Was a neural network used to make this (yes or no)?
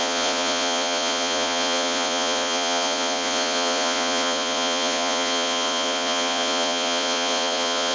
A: yes